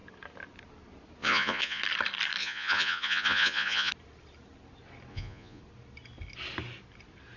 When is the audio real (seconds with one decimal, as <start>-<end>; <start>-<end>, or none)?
0.0-1.2; 1.8-2.4; 3.9-5.1; 5.6-7.4

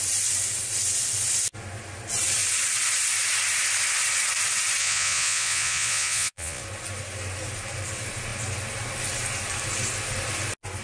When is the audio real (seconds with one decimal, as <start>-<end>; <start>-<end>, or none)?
0.0-4.8; 6.6-10.8

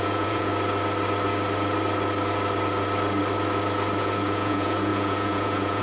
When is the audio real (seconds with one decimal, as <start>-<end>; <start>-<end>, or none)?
0.5-4.0

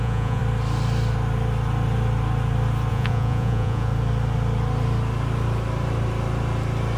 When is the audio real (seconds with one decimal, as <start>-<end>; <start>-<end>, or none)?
0.4-2.9; 3.9-7.0

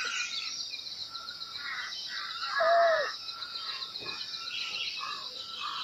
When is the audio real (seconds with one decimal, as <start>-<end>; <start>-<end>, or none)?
0.0-1.0; 2.1-2.8; 4.2-5.8

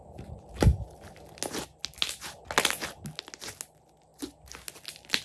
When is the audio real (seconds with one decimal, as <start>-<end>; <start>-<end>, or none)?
0.0-5.2